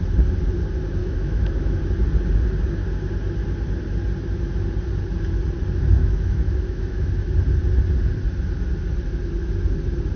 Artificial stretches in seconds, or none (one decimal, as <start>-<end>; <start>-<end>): 1.0-1.8; 6.0-7.0